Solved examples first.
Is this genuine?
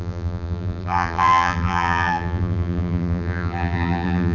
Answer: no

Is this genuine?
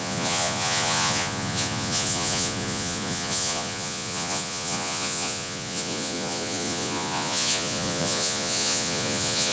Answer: no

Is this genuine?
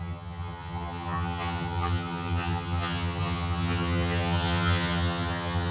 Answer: no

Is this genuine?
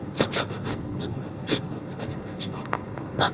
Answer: no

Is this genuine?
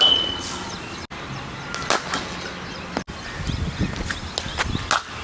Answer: yes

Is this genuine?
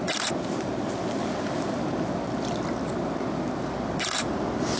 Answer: yes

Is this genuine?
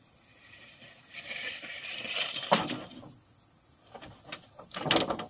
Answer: yes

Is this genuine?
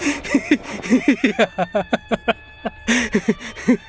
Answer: yes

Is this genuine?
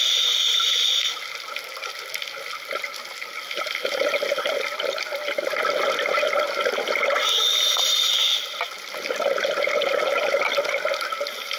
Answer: yes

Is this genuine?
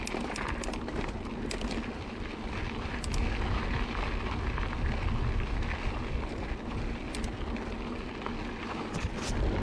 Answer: yes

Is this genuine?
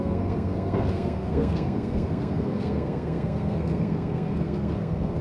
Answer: no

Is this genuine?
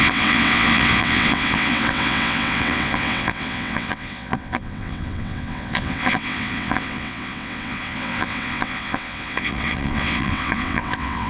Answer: no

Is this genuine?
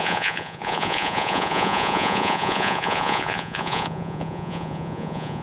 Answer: no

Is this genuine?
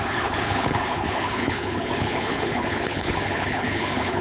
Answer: no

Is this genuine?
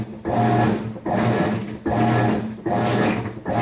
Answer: yes